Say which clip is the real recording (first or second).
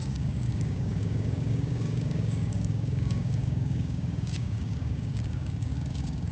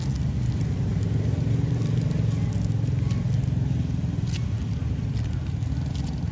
second